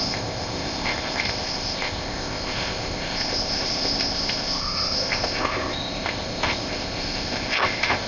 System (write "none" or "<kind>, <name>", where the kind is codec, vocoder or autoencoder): codec, ZipCodec